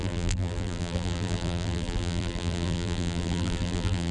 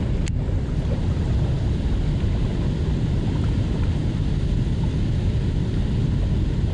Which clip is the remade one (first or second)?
first